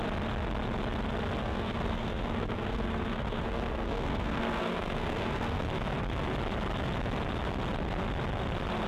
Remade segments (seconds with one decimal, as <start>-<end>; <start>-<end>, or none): 1.4-5.6